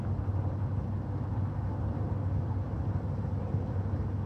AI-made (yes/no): no